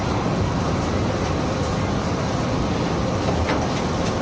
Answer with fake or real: real